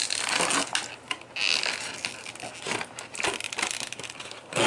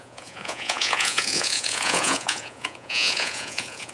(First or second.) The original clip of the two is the first